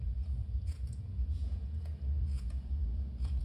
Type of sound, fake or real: fake